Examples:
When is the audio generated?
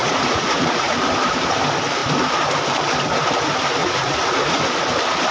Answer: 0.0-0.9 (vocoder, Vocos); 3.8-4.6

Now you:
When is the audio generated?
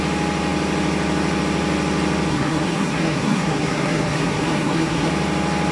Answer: 2.3-5.1 (codec, SNAC)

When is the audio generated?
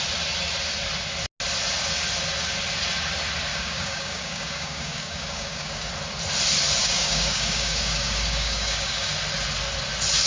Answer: 3.5-5.9 (codec, DAC); 6.8-9.1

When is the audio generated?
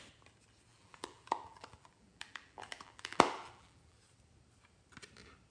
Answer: 0.7-4.0 (vocoder, BigVGAN v2)